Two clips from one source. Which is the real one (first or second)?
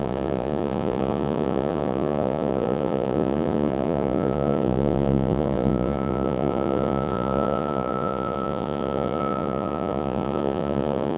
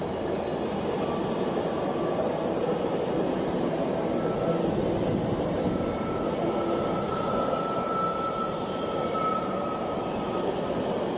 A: second